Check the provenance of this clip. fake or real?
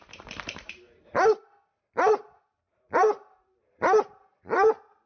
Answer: fake